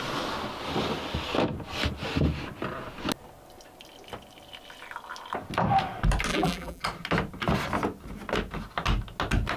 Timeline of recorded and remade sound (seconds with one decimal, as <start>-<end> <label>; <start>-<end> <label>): 0.0-6.3 recorded; 6.3-6.8 remade; 6.8-9.6 recorded